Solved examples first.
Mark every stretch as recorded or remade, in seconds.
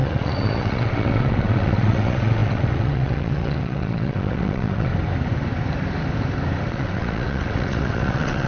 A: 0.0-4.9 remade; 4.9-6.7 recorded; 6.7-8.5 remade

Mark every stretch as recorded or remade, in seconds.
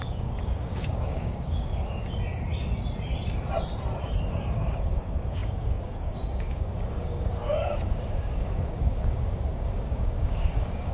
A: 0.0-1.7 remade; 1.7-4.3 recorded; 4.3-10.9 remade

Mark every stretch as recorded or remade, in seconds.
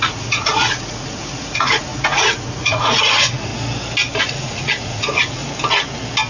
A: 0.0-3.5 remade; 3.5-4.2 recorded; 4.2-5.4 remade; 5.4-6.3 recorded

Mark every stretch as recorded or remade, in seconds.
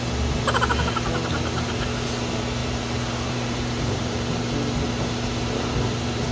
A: 0.0-2.6 recorded; 2.6-4.4 remade; 4.4-6.3 recorded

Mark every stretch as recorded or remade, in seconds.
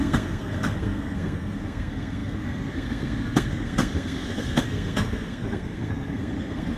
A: 0.0-6.8 remade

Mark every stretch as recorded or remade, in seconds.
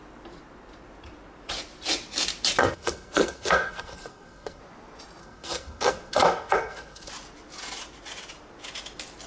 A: 0.0-2.6 recorded; 2.6-4.6 remade; 4.6-5.2 recorded; 5.2-7.1 remade; 7.1-9.3 recorded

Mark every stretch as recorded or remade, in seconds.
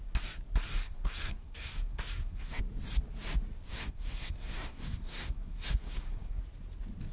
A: 0.0-0.7 recorded; 0.7-2.6 remade; 2.6-3.7 recorded; 3.7-6.4 remade; 6.4-7.1 recorded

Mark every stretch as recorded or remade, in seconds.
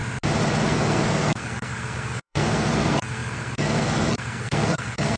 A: 0.0-0.6 recorded; 0.6-5.2 remade